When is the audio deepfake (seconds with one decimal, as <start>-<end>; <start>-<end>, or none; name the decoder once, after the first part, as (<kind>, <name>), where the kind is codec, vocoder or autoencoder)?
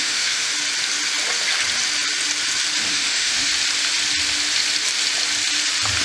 0.0-0.5 (autoencoder, DAC-VAE); 2.9-3.5